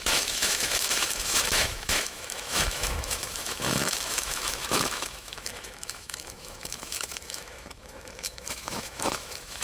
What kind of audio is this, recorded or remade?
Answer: remade